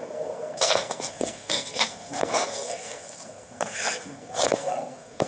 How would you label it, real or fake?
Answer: fake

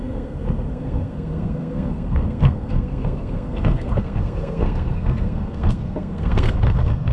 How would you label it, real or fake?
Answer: fake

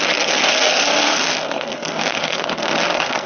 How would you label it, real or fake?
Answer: fake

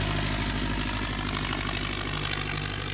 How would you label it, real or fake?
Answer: real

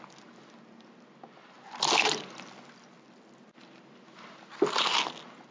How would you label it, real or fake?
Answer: real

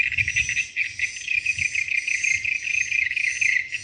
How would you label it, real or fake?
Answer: real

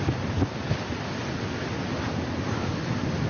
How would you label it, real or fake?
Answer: real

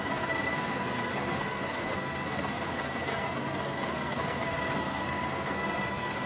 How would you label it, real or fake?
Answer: fake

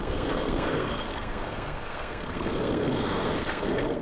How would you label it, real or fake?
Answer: fake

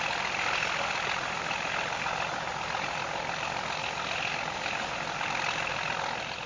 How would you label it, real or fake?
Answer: real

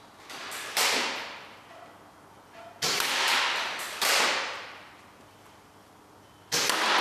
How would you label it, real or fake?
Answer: real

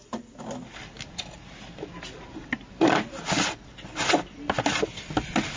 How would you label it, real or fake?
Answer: real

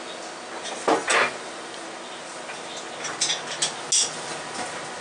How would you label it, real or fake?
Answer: real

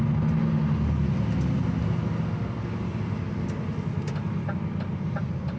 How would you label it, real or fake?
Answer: real